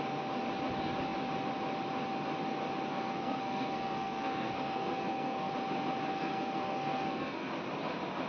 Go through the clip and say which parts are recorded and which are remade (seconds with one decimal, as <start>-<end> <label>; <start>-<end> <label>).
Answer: 0.0-2.9 recorded; 2.9-5.5 remade; 5.5-6.1 recorded; 6.1-7.5 remade; 7.5-8.3 recorded